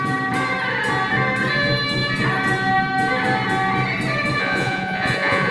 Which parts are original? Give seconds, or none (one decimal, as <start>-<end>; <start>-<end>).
0.0-4.4